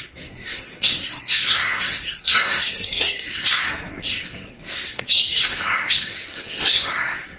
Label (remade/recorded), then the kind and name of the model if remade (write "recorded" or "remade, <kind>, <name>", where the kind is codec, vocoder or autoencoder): remade, codec, SNAC